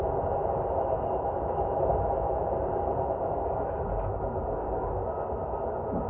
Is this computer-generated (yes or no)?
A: no